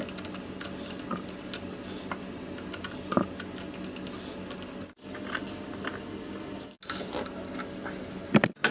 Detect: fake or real real